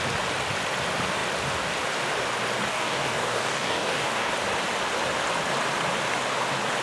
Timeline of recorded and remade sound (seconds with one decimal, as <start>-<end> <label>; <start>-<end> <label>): 0.0-2.7 recorded; 2.7-4.3 remade; 4.3-6.8 recorded